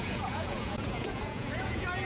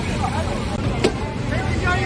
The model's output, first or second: first